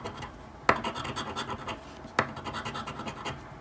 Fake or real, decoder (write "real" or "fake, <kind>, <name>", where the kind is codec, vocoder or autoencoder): real